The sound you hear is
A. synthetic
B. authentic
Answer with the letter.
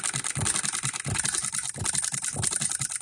B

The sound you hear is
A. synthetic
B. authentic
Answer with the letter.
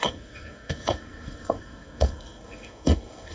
A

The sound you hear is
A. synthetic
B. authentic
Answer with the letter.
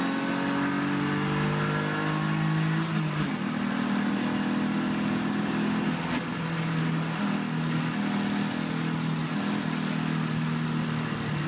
B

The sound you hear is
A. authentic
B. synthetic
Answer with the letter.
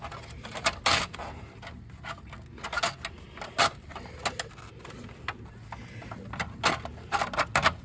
A